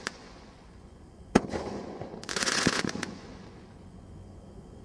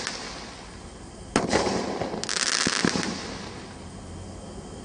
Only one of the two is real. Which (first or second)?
second